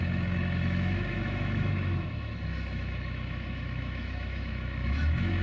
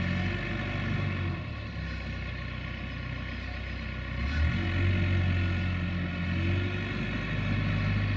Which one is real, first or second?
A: second